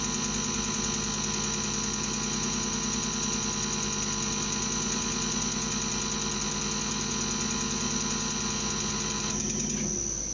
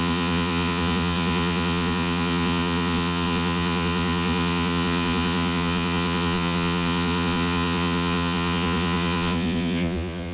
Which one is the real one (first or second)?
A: first